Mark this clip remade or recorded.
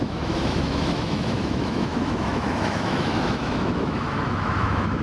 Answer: remade